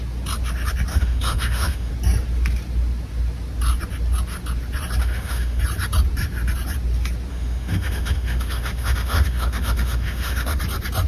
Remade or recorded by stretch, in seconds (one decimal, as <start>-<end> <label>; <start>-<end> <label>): 0.0-0.9 recorded; 0.9-1.9 remade; 1.9-5.0 recorded; 5.0-5.6 remade; 5.6-7.3 recorded; 7.3-10.6 remade; 10.6-11.1 recorded